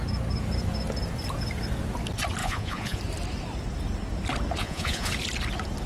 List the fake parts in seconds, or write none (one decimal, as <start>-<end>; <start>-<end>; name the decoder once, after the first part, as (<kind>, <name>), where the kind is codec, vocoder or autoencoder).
2.4-3.0 (vocoder, Vocos); 4.6-5.1